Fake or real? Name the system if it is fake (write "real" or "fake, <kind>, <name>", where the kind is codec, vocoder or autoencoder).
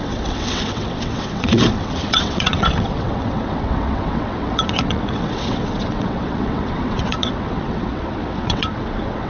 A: fake, vocoder, WaveNeXt